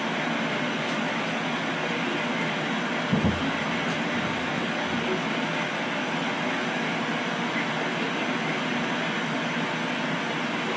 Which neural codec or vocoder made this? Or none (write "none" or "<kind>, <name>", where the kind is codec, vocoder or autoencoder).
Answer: none